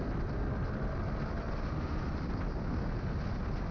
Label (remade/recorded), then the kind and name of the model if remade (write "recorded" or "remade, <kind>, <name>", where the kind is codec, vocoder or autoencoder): recorded